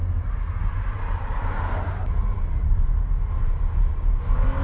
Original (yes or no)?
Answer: yes